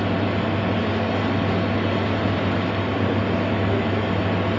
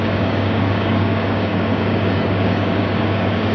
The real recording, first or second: first